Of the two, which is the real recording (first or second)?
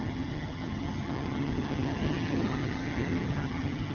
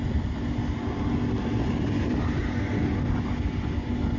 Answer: second